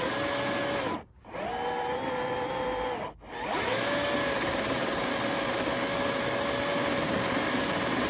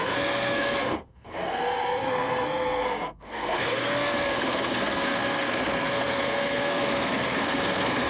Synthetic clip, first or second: second